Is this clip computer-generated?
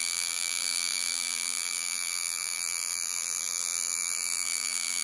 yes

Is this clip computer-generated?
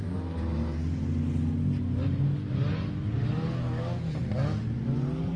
no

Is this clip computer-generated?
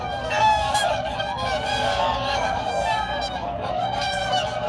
yes